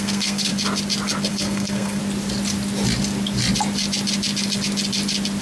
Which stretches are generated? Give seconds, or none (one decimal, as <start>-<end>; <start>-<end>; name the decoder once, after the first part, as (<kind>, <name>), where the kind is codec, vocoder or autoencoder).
0.0-0.5 (codec, SNAC); 1.3-2.0